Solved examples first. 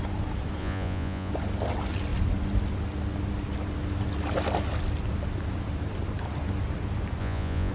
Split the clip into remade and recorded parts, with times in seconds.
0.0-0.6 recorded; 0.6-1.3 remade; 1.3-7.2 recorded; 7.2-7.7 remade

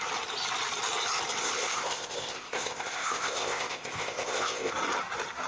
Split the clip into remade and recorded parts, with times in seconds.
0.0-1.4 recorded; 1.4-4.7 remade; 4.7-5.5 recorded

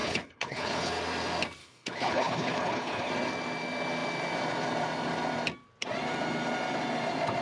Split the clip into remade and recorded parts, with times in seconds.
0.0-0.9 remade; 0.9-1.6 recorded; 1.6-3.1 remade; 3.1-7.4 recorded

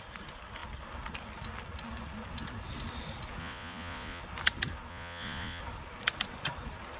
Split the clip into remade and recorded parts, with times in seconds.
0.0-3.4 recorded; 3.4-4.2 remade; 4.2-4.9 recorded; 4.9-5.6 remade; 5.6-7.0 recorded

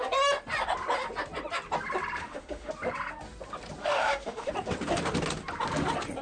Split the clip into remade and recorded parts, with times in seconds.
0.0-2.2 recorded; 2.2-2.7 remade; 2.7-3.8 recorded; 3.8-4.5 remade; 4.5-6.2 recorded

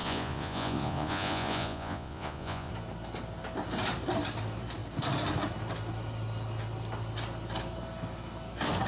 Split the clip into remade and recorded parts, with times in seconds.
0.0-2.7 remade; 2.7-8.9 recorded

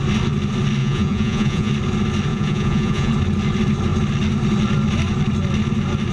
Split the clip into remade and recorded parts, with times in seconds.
0.0-0.8 recorded; 0.8-1.7 remade; 1.7-2.3 recorded; 2.3-3.1 remade; 3.1-6.1 recorded

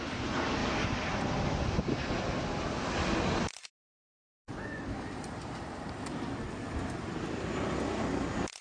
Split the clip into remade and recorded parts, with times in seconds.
0.0-0.6 remade; 0.6-3.4 recorded; 3.4-8.6 remade